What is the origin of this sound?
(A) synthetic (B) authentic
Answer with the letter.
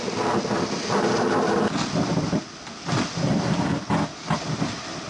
B